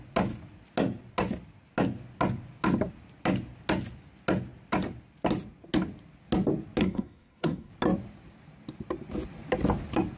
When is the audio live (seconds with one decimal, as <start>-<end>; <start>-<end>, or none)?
0.0-6.8; 7.7-10.2